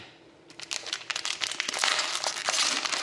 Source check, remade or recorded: recorded